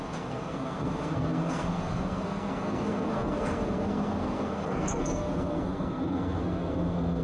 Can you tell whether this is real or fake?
fake